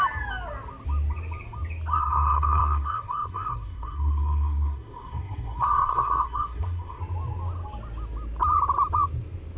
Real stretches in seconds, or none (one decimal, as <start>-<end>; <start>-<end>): 0.0-1.9; 7.0-9.6